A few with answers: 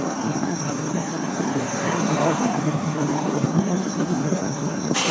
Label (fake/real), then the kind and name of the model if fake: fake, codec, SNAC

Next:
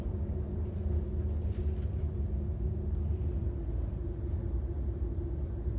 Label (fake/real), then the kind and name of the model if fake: real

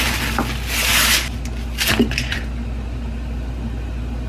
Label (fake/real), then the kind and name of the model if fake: real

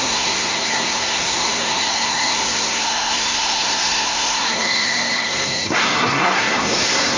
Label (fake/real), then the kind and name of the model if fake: fake, codec, SNAC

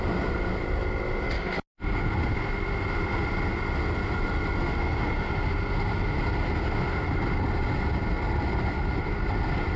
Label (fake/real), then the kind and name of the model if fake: real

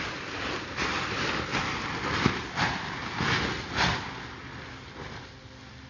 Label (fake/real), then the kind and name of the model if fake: real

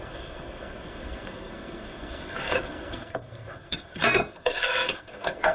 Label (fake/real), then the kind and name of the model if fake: fake, codec, SNAC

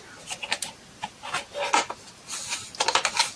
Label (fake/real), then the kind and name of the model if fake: real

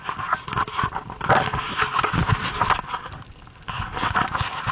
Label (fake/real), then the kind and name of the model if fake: real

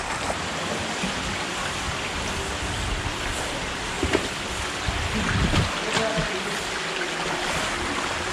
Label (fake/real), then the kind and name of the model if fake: real